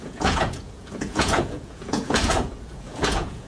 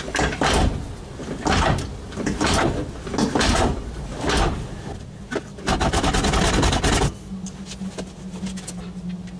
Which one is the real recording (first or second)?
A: second